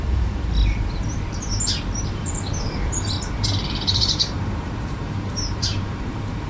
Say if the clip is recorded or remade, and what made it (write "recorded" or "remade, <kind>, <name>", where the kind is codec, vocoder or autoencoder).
remade, vocoder, BigVGAN v2